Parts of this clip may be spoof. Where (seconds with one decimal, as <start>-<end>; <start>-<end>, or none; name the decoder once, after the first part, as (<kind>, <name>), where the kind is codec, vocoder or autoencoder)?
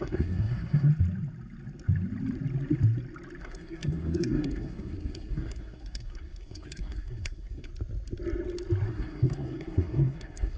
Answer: 0.0-0.9 (codec, SNAC); 3.4-7.7; 8.9-10.6